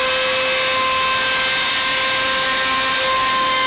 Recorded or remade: recorded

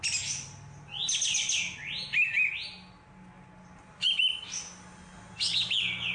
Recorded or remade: recorded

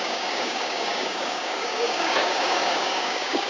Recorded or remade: remade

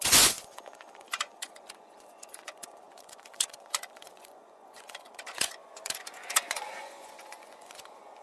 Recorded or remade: remade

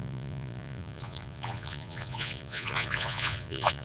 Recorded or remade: remade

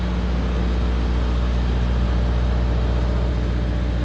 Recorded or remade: recorded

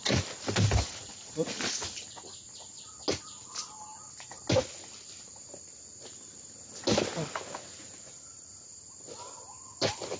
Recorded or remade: recorded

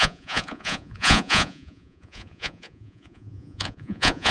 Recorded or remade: remade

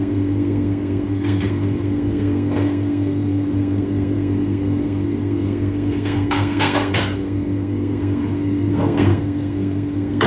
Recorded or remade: remade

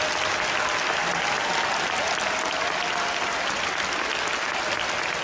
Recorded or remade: recorded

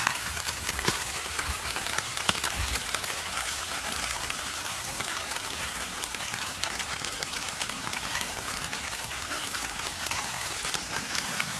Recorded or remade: remade